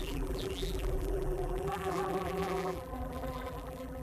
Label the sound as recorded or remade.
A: remade